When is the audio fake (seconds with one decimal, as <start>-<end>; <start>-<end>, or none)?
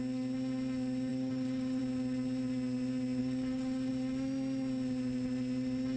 1.1-1.8; 3.2-3.9